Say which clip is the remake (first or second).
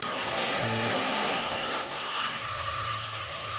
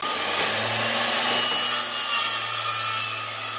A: first